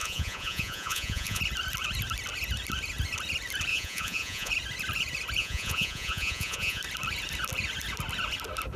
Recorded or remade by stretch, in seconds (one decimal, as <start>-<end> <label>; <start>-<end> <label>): 0.0-1.4 remade; 1.4-3.7 recorded; 3.7-4.5 remade; 4.5-5.4 recorded; 5.4-6.8 remade; 6.8-8.8 recorded